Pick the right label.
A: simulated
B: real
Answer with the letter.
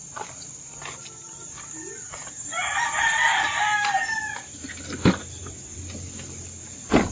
B